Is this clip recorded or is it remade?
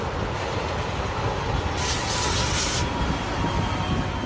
recorded